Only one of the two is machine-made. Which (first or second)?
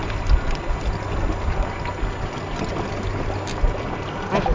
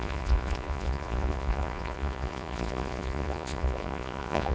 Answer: second